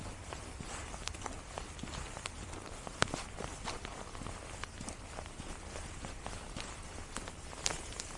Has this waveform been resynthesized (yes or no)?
no